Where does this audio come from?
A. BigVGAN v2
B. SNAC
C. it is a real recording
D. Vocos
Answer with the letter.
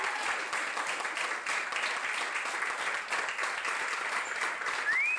C